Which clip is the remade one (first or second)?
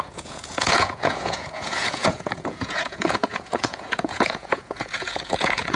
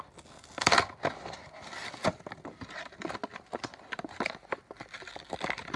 first